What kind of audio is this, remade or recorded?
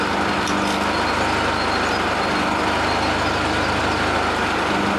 recorded